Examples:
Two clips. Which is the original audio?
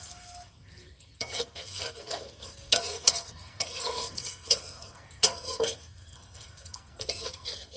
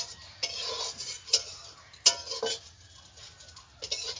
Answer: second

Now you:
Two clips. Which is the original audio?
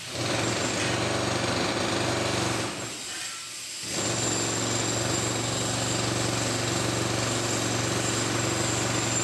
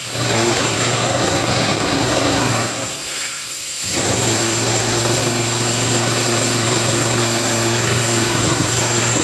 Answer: first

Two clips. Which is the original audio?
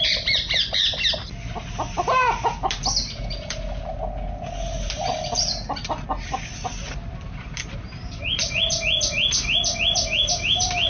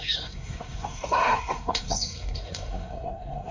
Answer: first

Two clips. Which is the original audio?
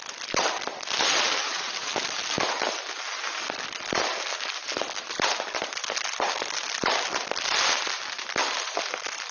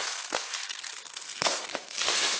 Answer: first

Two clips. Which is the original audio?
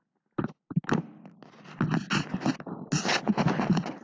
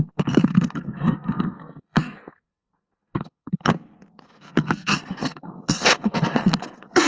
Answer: first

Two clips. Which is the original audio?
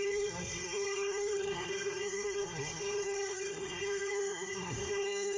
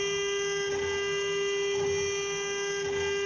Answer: second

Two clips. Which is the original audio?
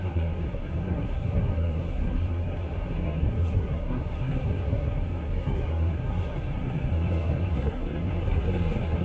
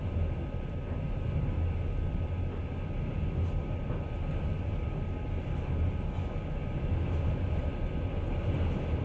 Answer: second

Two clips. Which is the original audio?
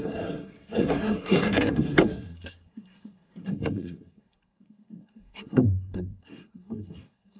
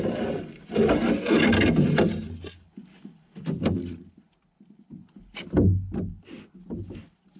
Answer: second